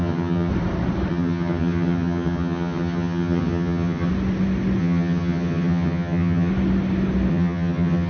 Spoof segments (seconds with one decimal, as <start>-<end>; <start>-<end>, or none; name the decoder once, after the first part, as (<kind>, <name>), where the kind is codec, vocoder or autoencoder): 0.0-0.5 (vocoder, HiFi-GAN); 1.1-4.1; 4.8-6.5; 7.3-8.1